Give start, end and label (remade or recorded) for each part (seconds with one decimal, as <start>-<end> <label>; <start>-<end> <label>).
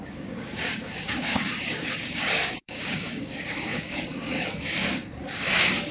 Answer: 0.0-5.9 remade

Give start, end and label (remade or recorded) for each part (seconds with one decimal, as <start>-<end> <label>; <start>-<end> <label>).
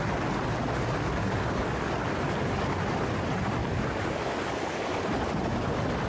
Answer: 0.0-1.2 recorded; 1.2-2.0 remade; 2.0-3.6 recorded; 3.6-4.9 remade; 4.9-6.1 recorded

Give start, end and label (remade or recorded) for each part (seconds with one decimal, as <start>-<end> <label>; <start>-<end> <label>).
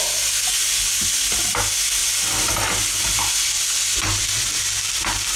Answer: 0.0-5.4 recorded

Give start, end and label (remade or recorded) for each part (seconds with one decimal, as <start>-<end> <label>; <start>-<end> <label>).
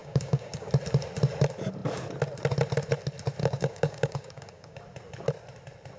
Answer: 0.0-0.7 remade; 0.7-3.4 recorded; 3.4-4.8 remade; 4.8-6.0 recorded